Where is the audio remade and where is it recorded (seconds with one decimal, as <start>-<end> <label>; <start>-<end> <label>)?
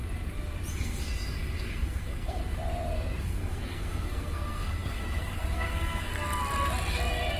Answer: 0.0-0.7 recorded; 0.7-2.4 remade; 2.4-3.2 recorded; 3.2-6.1 remade; 6.1-7.4 recorded